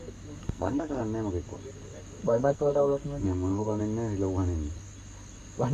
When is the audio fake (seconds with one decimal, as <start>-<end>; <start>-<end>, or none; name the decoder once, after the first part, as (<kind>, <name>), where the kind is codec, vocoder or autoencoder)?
0.4-1.0 (codec, SNAC); 2.2-3.8